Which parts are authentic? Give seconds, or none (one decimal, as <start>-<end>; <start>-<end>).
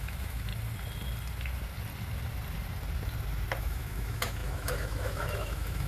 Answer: 0.5-3.6